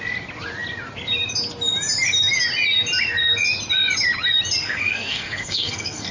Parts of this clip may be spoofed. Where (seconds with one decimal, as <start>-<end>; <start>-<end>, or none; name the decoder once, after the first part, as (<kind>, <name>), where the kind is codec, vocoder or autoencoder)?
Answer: 4.6-6.1 (codec, SNAC)